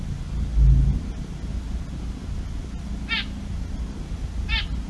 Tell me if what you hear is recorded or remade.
recorded